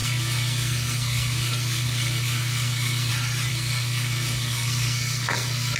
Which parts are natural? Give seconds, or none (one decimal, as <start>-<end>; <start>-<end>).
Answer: 3.1-3.5